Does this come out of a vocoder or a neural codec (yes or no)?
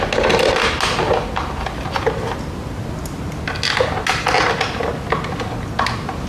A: no